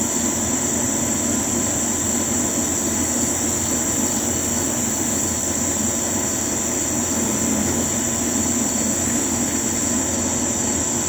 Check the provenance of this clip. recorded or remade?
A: recorded